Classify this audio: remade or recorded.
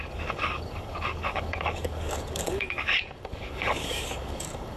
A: remade